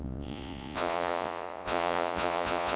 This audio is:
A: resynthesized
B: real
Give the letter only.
A